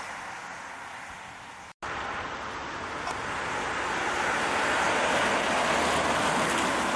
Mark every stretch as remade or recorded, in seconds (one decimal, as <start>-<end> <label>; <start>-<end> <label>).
0.0-7.0 recorded